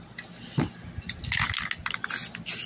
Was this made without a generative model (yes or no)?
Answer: yes